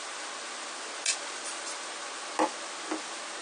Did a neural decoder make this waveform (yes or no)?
no